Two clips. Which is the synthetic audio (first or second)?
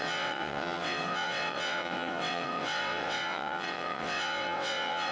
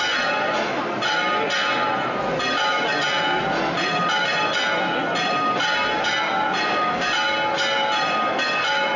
first